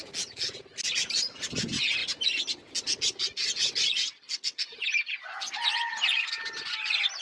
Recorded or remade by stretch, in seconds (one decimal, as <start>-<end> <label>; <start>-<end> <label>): 0.0-7.2 recorded